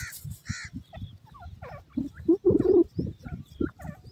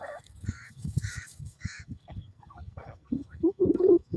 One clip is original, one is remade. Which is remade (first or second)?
second